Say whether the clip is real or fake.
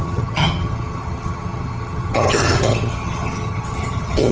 fake